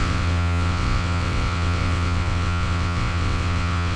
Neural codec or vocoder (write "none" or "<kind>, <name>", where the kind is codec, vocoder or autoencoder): vocoder, WaveNeXt